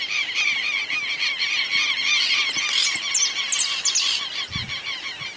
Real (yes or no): yes